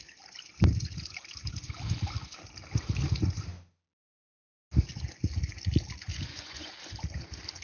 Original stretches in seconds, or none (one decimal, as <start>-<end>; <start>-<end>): 0.0-6.1; 6.7-7.6